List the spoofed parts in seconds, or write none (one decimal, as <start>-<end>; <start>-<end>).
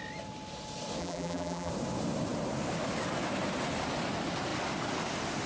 1.0-1.7